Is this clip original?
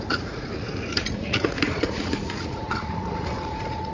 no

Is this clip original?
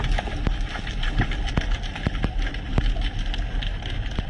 yes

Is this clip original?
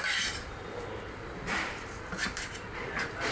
no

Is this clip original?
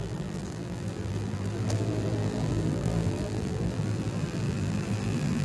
no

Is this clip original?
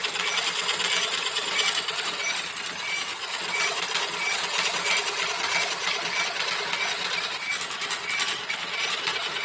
yes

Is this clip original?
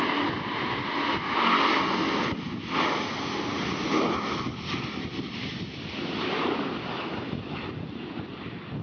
yes